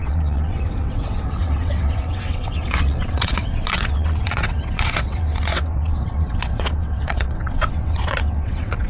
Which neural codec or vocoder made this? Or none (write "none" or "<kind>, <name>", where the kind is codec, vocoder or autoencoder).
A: vocoder, WaveNeXt